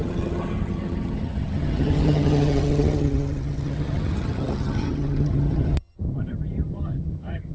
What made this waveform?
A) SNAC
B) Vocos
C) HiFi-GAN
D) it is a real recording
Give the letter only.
C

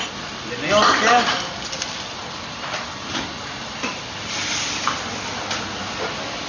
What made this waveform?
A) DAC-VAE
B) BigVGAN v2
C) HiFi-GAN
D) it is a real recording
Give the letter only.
D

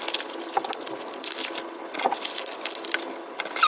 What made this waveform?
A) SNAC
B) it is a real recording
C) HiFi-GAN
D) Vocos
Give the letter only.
B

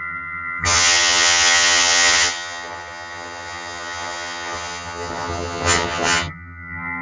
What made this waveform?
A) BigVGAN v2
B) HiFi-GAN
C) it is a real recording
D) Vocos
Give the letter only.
B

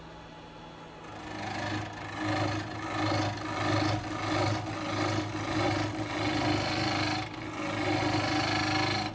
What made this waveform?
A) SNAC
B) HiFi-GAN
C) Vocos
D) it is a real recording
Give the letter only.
D